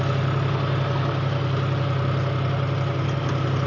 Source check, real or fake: real